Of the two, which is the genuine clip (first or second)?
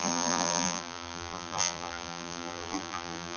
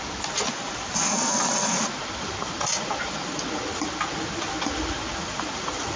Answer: second